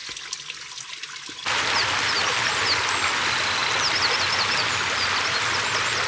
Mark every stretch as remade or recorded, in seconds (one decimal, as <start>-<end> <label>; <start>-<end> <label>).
0.0-6.1 recorded